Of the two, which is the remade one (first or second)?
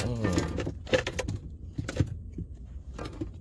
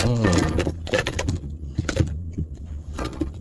second